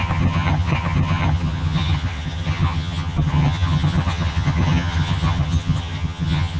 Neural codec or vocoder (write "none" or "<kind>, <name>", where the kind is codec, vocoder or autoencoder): vocoder, HiFi-GAN